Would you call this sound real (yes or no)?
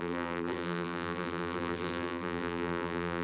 no